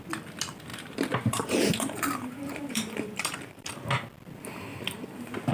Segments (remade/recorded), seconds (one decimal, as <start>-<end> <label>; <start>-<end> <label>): 0.0-0.7 recorded; 0.7-3.7 remade; 3.7-5.5 recorded